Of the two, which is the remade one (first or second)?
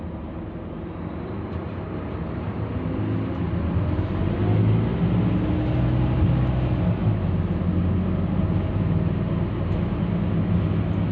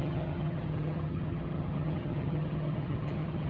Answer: second